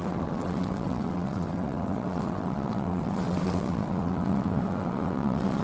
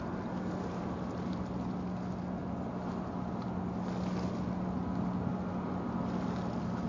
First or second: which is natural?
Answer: second